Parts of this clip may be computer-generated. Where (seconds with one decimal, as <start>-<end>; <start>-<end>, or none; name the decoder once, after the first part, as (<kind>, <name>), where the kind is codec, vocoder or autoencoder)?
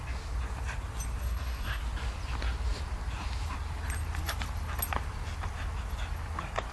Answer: 1.2-1.8 (codec, SNAC)